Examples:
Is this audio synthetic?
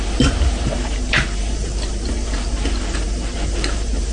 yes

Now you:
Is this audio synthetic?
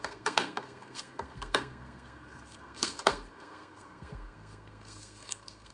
yes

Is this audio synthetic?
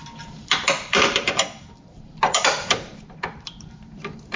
yes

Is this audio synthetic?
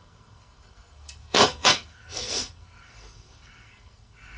yes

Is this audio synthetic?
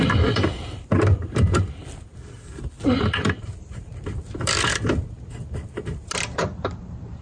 yes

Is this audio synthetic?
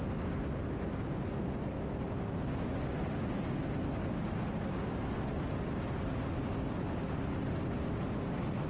no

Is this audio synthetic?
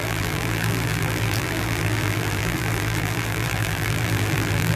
yes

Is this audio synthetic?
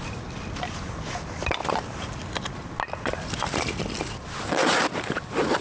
no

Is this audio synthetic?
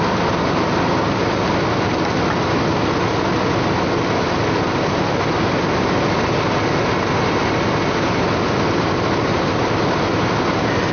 no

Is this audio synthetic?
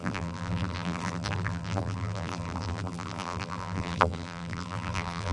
yes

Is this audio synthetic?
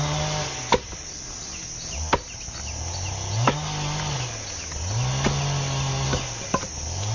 no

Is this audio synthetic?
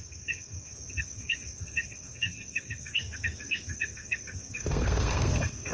yes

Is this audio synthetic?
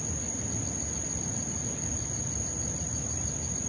no